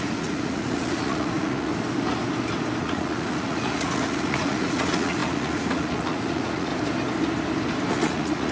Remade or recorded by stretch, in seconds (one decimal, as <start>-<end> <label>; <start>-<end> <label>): 0.0-1.7 remade; 1.7-2.8 recorded; 2.8-6.7 remade; 6.7-7.9 recorded; 7.9-8.5 remade